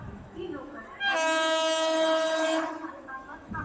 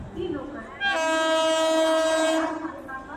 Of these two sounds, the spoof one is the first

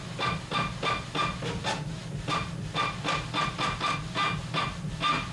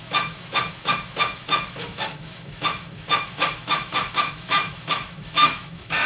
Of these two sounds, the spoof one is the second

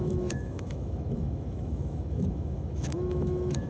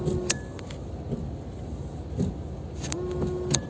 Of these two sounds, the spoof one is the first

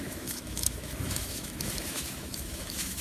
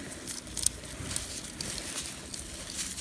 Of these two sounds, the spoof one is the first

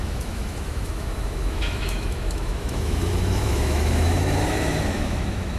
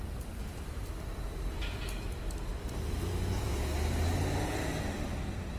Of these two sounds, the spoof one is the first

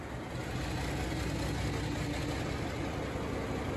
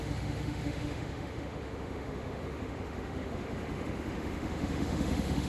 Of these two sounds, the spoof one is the second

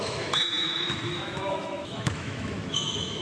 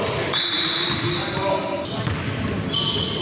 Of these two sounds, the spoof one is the first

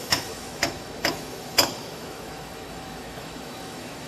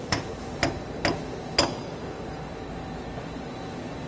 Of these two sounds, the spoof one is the first